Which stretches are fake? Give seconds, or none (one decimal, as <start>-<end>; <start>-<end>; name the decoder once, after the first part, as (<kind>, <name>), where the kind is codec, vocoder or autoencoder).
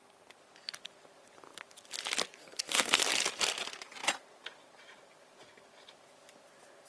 2.4-3.0 (codec, SNAC)